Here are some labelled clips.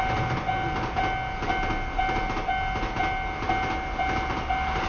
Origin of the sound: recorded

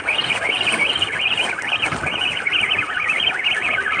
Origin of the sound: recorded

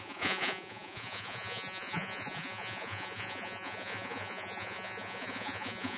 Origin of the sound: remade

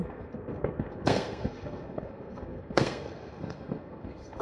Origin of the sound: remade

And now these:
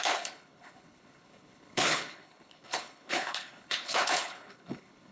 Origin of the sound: remade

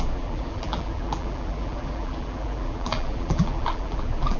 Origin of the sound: remade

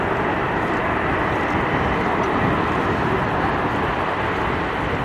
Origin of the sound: recorded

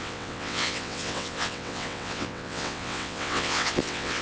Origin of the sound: remade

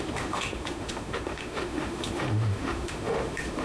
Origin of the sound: remade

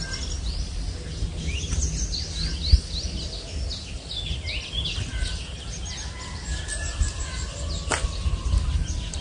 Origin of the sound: recorded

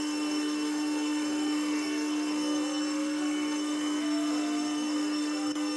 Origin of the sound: remade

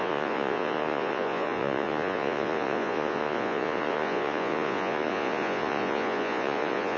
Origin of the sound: remade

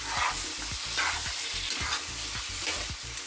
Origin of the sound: remade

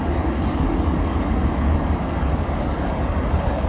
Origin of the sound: remade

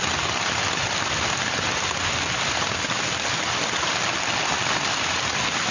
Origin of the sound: recorded